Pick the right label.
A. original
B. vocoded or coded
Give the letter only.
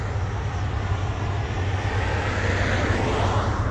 A